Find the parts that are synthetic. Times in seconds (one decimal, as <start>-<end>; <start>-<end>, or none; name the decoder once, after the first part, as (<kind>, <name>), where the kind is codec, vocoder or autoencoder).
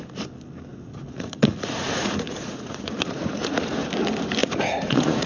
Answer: 0.7-3.8 (vocoder, Vocos); 4.4-5.3